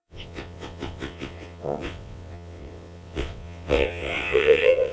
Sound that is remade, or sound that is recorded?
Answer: remade